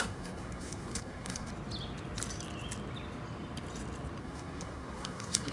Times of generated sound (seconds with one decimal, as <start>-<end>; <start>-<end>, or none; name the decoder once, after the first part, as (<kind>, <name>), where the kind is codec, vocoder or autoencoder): 0.0-1.5 (codec, SNAC); 4.2-5.5